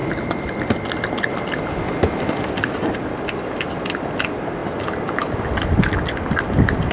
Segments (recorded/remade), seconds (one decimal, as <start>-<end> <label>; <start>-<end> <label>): 0.0-6.9 recorded